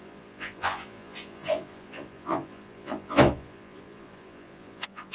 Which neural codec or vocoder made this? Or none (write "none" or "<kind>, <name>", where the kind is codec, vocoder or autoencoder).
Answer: vocoder, Vocos